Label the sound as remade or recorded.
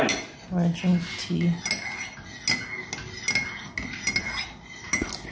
recorded